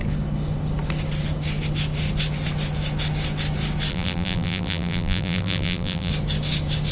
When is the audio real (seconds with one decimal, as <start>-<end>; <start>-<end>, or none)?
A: 0.0-3.9; 6.1-6.9